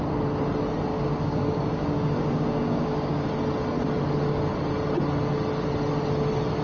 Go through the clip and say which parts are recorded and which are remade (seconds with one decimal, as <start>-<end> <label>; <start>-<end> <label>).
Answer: 0.0-0.9 recorded; 0.9-3.3 remade; 3.3-6.6 recorded